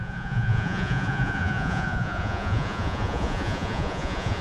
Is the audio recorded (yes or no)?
no